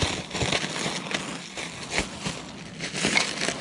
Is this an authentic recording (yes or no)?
yes